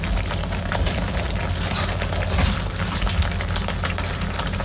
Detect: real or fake real